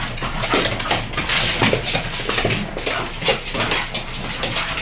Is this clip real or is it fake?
real